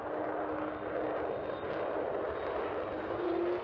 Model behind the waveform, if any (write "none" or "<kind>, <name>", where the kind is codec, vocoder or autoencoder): none